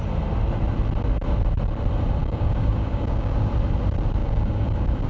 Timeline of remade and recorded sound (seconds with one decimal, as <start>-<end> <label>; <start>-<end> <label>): 0.0-2.2 recorded; 2.2-3.5 remade; 3.5-4.2 recorded; 4.2-5.1 remade